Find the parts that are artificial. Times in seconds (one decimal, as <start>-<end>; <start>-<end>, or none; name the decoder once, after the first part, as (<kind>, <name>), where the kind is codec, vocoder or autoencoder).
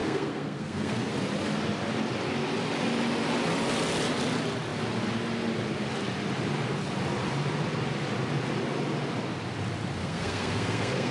0.0-1.1 (codec, SNAC); 10.0-11.1